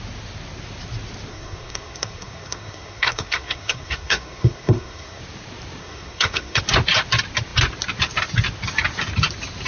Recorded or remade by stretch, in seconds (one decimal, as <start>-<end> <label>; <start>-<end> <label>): 0.0-1.3 recorded; 1.3-5.2 remade; 5.2-5.8 recorded; 5.8-6.6 remade; 6.6-9.7 recorded